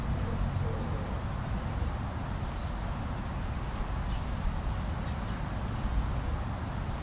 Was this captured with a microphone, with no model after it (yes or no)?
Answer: yes